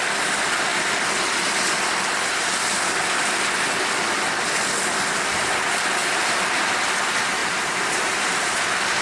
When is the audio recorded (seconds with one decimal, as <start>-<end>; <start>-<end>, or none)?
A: 0.0-6.0; 6.6-7.4; 8.6-9.0